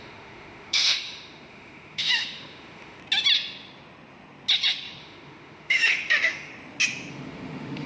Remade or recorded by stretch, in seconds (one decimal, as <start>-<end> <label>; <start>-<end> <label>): 0.0-3.0 remade; 3.0-5.0 recorded; 5.0-6.5 remade; 6.5-7.1 recorded; 7.1-7.9 remade